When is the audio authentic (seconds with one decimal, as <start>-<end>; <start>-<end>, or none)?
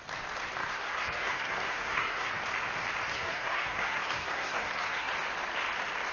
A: 0.0-0.6; 2.3-3.1; 5.1-6.1